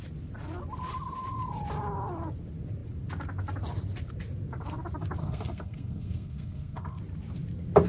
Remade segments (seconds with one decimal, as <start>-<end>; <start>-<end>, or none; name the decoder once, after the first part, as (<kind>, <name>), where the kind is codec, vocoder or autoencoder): 5.2-7.0 (codec, SNAC)

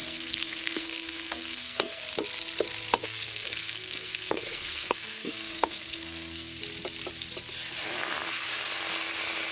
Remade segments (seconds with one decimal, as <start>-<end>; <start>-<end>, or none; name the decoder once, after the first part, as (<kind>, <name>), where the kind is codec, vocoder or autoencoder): 0.0-2.0 (codec, SNAC); 3.0-6.6

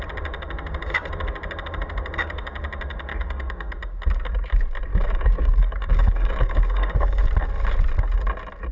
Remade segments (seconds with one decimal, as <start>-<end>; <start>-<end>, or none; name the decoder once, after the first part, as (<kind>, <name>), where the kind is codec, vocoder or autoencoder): 3.1-3.8 (codec, DAC); 4.9-7.2

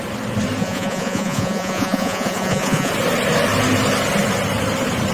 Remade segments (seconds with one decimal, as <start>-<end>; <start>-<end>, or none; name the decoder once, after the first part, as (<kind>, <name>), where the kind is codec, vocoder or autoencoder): 0.6-2.9 (vocoder, Vocos)

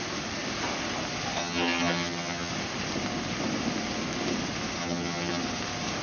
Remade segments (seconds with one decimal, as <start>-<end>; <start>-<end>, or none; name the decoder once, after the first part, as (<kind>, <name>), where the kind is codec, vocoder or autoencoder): 1.4-2.5 (vocoder, HiFi-GAN); 4.8-5.4